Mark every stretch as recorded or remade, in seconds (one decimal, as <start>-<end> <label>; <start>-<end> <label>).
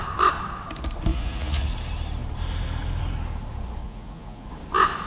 0.0-1.1 recorded; 1.1-1.7 remade; 1.7-3.8 recorded; 3.8-4.5 remade; 4.5-5.1 recorded